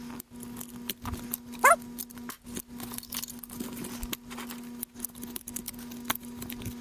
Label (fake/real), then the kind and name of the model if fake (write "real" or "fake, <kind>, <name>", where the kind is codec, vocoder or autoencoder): real